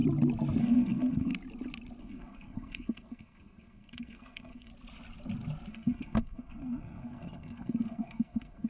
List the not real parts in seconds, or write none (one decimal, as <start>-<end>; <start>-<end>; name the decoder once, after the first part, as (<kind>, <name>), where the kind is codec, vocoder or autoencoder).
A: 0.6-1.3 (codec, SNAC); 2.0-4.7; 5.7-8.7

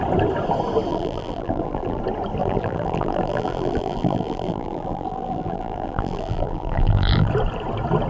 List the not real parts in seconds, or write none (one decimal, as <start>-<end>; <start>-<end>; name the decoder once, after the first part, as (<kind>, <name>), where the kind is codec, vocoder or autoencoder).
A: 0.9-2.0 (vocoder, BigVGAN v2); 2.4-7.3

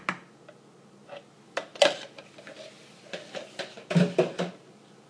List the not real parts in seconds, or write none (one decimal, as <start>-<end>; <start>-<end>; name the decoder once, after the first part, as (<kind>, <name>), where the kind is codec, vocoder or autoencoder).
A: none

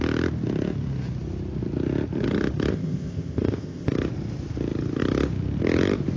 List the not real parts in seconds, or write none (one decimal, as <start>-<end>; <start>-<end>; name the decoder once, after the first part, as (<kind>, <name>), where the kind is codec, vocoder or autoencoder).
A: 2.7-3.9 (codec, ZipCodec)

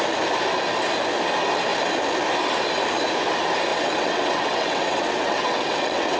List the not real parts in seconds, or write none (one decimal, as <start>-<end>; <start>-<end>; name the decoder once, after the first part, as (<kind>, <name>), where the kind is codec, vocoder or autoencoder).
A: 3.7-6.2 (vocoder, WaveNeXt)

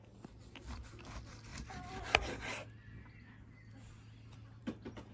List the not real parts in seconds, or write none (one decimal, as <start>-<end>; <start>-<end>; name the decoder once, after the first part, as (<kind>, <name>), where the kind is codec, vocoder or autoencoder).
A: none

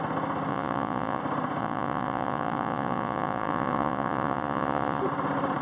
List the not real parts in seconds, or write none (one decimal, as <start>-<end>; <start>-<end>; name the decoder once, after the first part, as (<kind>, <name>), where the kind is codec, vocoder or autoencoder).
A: 0.5-1.2 (vocoder, Vocos); 1.6-5.0